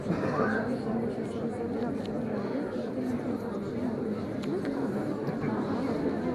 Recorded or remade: recorded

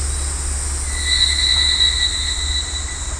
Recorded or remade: recorded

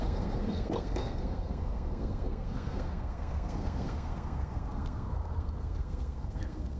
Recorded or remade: remade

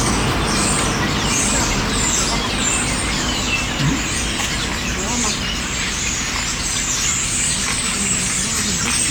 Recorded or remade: recorded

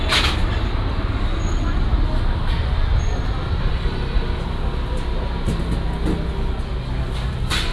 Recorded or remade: recorded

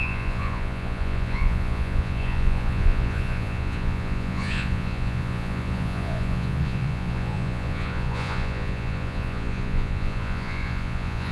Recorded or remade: remade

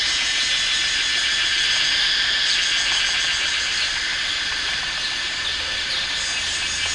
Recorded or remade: recorded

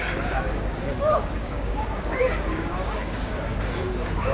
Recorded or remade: remade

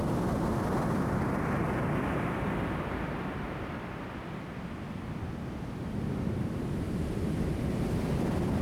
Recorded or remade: recorded